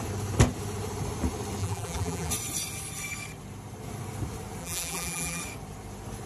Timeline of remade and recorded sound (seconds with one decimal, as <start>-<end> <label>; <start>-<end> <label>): 0.0-1.6 recorded; 1.6-2.3 remade; 2.3-4.6 recorded; 4.6-5.4 remade; 5.4-6.3 recorded